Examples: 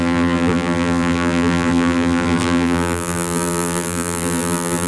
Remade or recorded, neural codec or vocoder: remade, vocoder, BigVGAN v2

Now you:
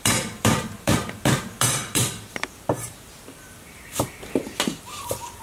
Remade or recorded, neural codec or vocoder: remade, vocoder, BigVGAN v2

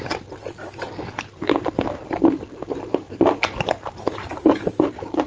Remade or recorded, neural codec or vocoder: remade, vocoder, BigVGAN v2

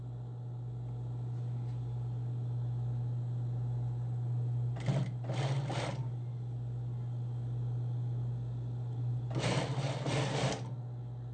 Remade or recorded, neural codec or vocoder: recorded